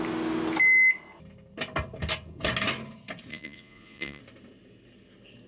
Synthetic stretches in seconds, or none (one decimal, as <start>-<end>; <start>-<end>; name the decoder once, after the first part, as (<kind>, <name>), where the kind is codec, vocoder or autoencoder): 3.3-4.2 (vocoder, Vocos)